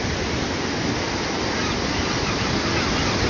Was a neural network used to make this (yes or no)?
no